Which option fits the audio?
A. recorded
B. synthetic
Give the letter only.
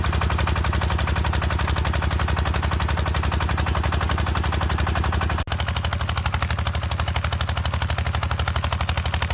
A